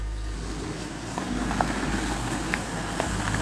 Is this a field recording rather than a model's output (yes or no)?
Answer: no